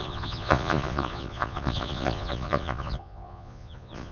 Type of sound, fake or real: fake